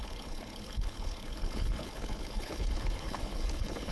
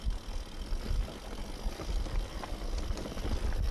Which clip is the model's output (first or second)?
first